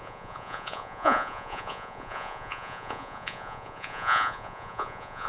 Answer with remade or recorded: remade